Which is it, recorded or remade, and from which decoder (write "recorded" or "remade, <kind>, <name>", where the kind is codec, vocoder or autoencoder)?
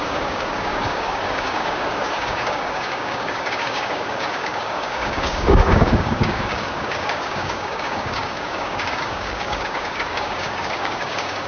remade, codec, DAC